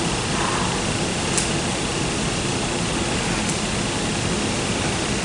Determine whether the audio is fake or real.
real